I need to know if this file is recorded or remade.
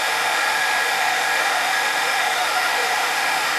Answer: remade